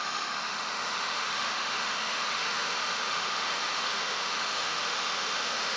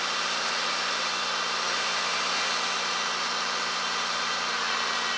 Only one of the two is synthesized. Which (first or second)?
first